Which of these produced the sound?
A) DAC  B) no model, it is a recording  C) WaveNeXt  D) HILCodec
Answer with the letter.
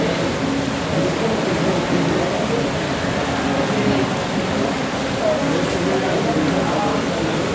B